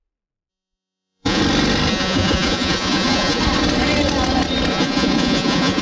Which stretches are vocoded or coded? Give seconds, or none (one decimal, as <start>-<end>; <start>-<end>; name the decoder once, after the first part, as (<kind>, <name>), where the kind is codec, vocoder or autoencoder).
0.5-1.4 (vocoder, Vocos); 1.9-3.4; 4.7-5.8